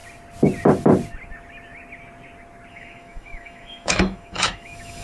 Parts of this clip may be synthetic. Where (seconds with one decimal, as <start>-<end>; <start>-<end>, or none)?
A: 2.7-5.0